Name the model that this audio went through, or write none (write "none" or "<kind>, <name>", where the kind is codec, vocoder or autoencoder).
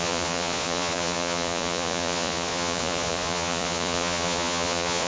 vocoder, Vocos